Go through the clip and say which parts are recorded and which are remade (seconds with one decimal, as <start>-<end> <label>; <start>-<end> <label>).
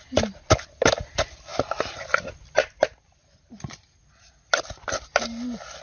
0.0-5.8 recorded